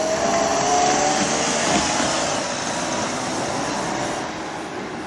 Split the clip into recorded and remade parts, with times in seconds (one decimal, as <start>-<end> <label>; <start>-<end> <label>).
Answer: 0.0-5.1 recorded